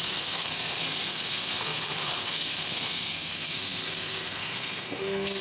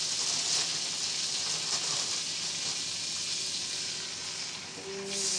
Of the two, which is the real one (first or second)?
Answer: second